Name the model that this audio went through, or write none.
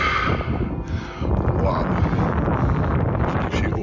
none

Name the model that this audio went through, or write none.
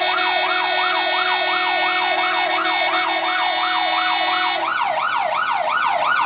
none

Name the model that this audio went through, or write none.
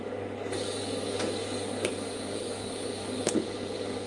codec, DAC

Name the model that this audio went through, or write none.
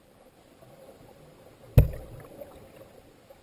none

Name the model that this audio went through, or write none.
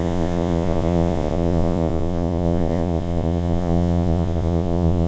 vocoder, Vocos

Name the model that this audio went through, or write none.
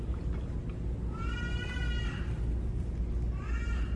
none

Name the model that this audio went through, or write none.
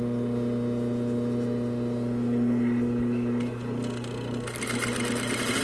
none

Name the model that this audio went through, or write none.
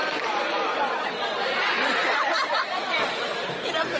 vocoder, BigVGAN v2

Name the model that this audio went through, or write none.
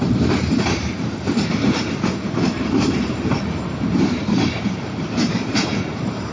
vocoder, BigVGAN v2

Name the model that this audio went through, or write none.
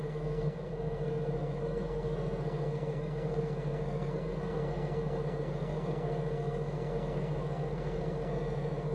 codec, SNAC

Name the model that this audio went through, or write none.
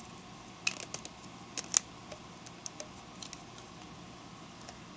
none